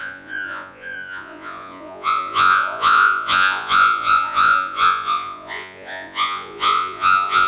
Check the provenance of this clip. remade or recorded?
remade